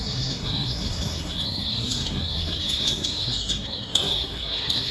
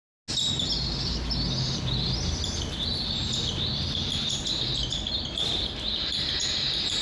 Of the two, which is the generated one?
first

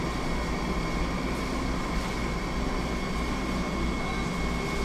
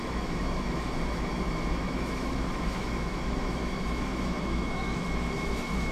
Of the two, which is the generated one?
second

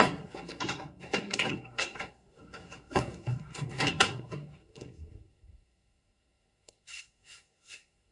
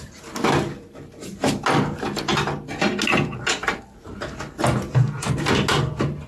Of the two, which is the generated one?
first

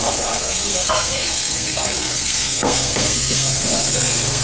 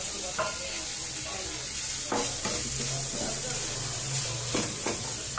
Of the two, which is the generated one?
first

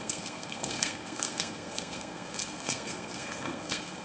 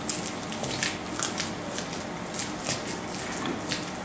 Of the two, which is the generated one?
first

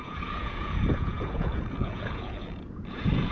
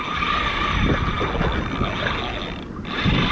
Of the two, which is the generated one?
first